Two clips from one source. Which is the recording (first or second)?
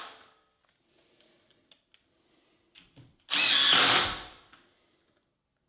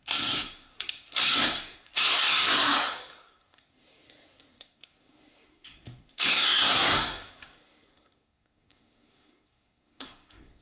first